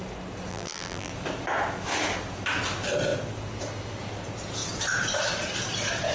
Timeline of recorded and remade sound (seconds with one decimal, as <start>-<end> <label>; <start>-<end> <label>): 0.0-0.5 recorded; 0.5-1.1 remade; 1.1-6.1 recorded